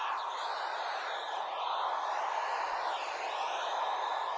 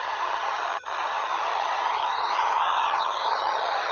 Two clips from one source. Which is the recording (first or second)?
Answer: first